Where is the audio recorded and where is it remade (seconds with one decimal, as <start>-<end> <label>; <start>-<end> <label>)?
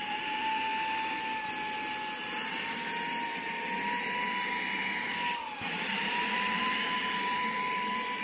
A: 0.0-0.7 remade; 0.7-5.6 recorded; 5.6-8.2 remade